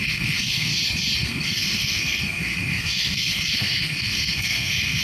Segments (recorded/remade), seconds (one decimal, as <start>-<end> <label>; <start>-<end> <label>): 0.0-0.7 remade; 0.7-1.2 recorded; 1.2-5.0 remade